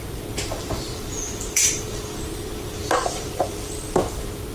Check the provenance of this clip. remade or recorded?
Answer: remade